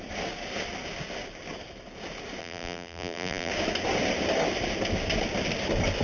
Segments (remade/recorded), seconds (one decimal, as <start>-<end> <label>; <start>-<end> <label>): 0.0-2.4 recorded; 2.4-3.5 remade; 3.5-6.0 recorded